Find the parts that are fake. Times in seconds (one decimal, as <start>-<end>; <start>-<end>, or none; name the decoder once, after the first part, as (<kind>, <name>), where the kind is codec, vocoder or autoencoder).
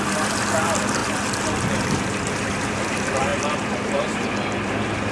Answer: 0.0-1.0 (vocoder, BigVGAN v2); 1.7-5.1